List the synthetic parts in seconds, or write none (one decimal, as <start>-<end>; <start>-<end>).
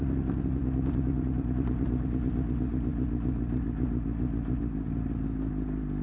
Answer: none